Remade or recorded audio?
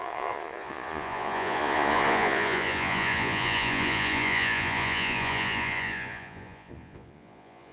remade